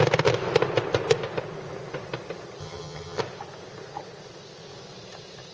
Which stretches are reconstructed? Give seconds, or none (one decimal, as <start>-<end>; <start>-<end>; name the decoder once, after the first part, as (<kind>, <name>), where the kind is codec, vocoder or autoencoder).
2.6-3.2 (vocoder, HiFi-GAN)